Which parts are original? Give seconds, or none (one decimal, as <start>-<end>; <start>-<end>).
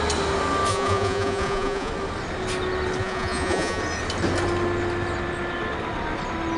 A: 0.0-0.7; 1.9-3.0; 3.8-6.6